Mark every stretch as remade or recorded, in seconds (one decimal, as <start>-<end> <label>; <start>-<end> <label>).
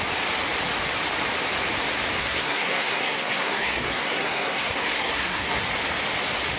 0.0-2.2 recorded; 2.2-5.6 remade; 5.6-6.6 recorded